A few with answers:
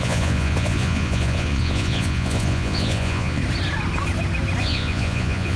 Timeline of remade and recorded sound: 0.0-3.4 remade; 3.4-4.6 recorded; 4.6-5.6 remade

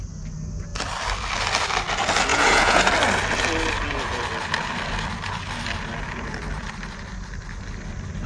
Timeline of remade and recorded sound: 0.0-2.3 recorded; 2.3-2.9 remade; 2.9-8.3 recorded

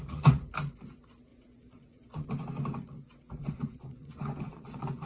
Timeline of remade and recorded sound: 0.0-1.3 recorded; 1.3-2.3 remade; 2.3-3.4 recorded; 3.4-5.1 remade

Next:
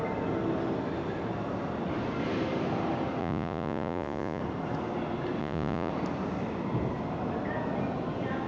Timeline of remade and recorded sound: 0.0-3.2 recorded; 3.2-4.4 remade; 4.4-5.4 recorded; 5.4-5.9 remade; 5.9-8.5 recorded

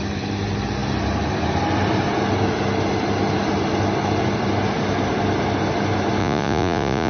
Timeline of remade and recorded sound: 0.0-6.2 recorded; 6.2-7.1 remade

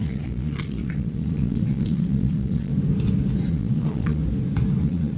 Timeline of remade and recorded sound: 0.0-2.7 remade; 2.7-3.5 recorded; 3.5-4.2 remade; 4.2-4.8 recorded; 4.8-5.2 remade

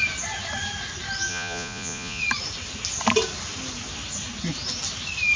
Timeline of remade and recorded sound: 0.0-1.3 recorded; 1.3-2.2 remade; 2.2-5.4 recorded